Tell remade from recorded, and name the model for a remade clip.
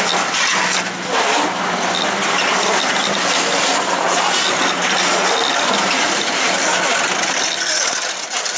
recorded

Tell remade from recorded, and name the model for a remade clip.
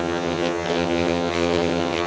remade, vocoder, HiFi-GAN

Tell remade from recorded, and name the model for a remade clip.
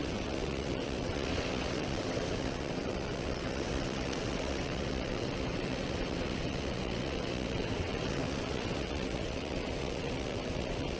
remade, vocoder, WaveNeXt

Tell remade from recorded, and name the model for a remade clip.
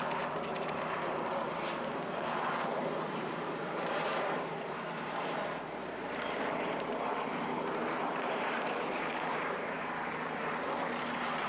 remade, vocoder, BigVGAN v2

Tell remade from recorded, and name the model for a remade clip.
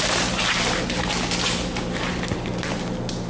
recorded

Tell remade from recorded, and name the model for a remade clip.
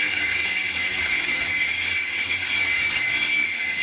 remade, codec, DAC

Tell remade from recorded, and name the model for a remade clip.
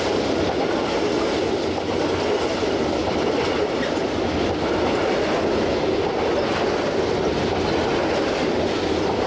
recorded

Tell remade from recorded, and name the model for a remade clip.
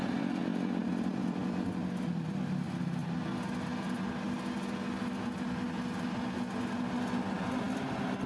recorded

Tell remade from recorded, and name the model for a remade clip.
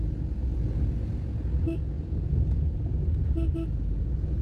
recorded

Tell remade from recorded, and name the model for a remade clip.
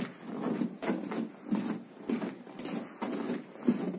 recorded